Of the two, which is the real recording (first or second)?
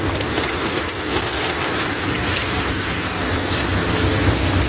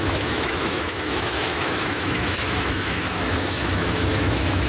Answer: first